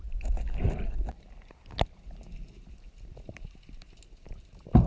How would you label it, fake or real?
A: real